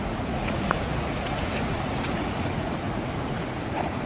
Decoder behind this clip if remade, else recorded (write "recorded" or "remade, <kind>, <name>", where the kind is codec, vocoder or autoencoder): remade, vocoder, Vocos